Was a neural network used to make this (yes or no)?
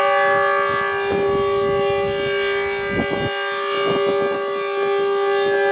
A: no